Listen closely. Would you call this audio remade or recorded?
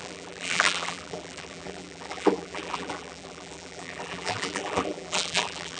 remade